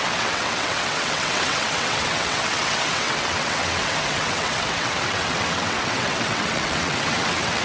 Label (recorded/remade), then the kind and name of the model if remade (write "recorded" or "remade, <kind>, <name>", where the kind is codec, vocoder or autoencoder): remade, vocoder, WaveNeXt